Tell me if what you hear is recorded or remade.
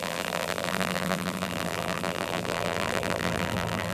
remade